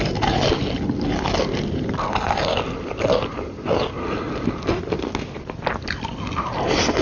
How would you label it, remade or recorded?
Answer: recorded